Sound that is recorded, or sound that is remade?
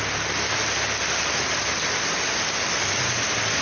recorded